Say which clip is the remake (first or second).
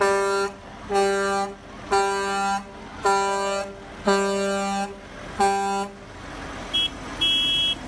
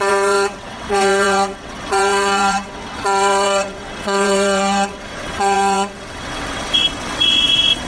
second